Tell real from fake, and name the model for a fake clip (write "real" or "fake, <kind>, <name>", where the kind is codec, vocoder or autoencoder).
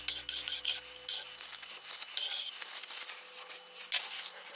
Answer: real